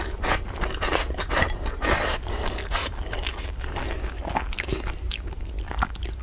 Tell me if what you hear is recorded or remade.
recorded